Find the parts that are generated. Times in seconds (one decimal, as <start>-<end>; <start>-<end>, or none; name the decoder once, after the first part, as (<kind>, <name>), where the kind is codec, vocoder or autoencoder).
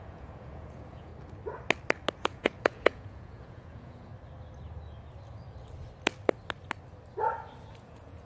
0.0-1.1 (vocoder, Vocos); 2.1-4.1; 7.7-8.3